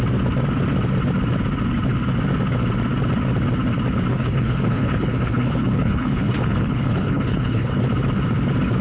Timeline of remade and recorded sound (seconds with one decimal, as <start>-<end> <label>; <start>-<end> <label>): 0.0-4.1 recorded; 4.1-7.8 remade; 7.8-8.8 recorded